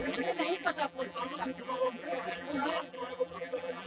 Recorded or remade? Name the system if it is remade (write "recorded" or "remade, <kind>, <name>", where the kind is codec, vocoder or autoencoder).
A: remade, vocoder, BigVGAN v2